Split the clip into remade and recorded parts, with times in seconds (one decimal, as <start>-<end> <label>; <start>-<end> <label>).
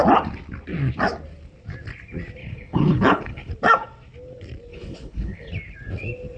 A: 0.0-2.4 recorded; 2.4-3.5 remade; 3.5-4.7 recorded; 4.7-5.5 remade; 5.5-6.4 recorded